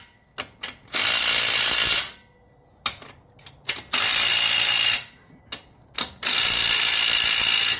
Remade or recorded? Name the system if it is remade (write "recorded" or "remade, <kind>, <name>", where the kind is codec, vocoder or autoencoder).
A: recorded